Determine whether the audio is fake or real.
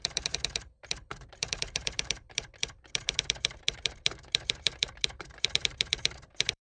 fake